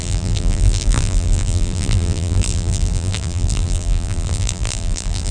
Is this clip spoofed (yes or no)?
yes